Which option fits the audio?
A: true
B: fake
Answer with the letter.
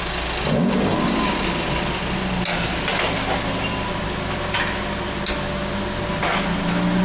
A